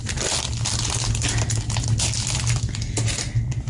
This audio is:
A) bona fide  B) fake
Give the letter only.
A